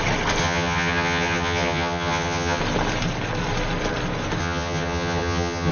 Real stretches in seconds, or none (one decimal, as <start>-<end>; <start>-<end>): 0.0-0.4; 2.6-4.4